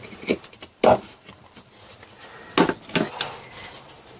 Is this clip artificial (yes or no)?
no